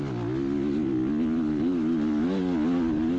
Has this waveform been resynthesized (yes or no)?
no